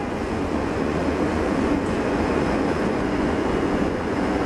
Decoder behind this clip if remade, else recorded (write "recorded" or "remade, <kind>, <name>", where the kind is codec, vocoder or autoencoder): remade, vocoder, Vocos